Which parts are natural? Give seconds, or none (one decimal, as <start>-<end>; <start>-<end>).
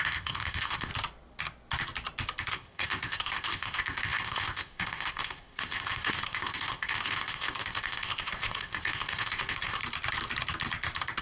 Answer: 0.9-2.5; 9.8-11.2